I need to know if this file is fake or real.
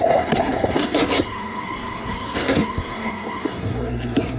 fake